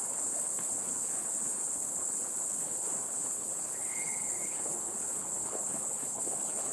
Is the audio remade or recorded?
remade